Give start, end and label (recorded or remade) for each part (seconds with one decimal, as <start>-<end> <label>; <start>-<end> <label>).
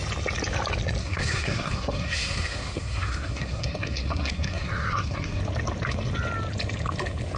0.0-1.0 recorded; 1.0-5.4 remade; 5.4-7.4 recorded